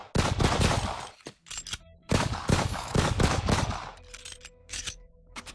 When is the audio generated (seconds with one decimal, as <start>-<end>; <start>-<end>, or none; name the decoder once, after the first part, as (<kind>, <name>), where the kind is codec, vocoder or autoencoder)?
2.0-3.6 (codec, DAC); 4.6-5.5